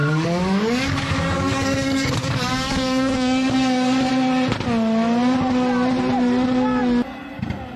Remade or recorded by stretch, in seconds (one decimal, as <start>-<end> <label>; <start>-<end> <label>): 0.0-4.1 remade; 4.1-7.8 recorded